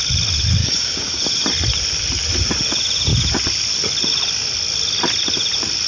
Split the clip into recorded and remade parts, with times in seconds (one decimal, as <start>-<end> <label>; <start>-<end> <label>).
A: 0.0-0.6 recorded; 0.6-1.2 remade; 1.2-5.9 recorded